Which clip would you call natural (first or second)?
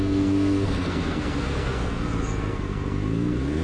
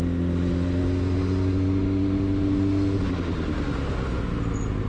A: second